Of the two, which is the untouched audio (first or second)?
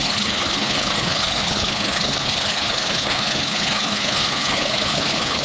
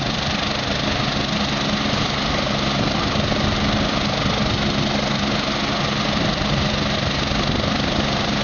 second